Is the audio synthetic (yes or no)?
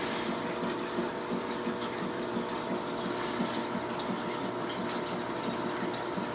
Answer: no